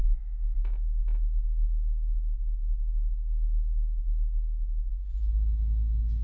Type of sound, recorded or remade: recorded